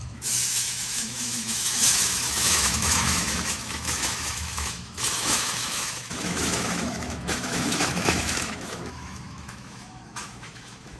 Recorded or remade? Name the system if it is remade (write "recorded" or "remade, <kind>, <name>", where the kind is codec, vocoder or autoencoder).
remade, autoencoder, DAC-VAE